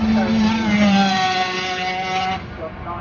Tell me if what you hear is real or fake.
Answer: fake